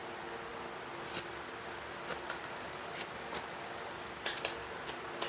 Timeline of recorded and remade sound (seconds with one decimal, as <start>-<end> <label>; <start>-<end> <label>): 0.0-5.3 recorded